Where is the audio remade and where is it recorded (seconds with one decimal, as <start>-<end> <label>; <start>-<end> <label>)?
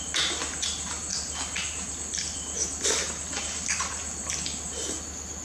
0.0-5.4 recorded